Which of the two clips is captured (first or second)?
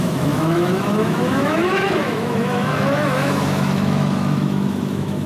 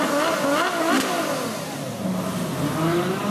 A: second